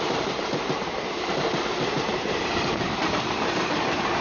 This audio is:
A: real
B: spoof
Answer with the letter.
B